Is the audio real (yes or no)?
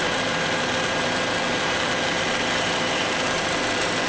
no